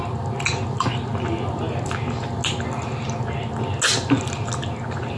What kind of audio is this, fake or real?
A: real